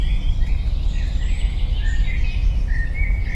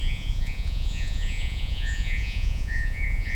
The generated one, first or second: second